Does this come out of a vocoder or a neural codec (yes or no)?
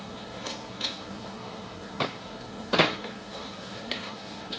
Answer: yes